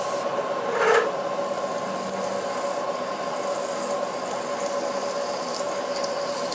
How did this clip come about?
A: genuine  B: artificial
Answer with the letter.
A